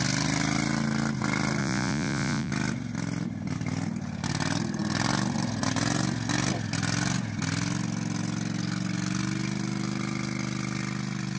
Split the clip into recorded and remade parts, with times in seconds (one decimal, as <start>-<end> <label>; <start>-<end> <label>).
0.0-1.6 recorded; 1.6-2.5 remade; 2.5-11.4 recorded